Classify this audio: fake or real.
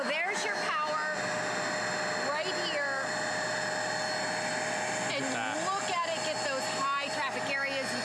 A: real